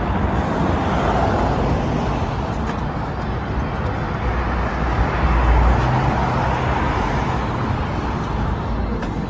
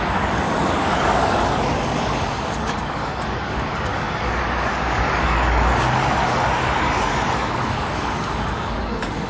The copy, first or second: second